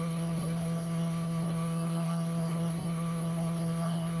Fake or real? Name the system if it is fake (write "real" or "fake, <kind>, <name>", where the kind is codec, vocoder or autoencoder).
fake, codec, SNAC